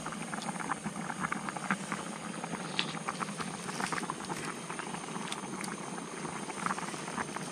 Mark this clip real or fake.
real